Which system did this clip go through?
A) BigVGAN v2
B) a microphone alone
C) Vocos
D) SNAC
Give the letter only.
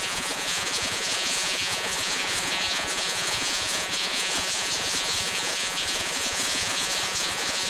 C